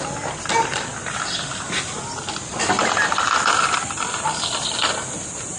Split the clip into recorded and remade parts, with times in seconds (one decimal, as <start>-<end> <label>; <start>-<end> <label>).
0.0-5.6 recorded